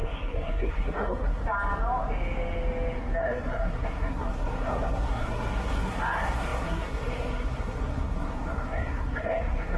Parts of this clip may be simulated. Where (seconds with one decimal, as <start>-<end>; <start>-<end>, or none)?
0.0-1.4; 3.2-9.8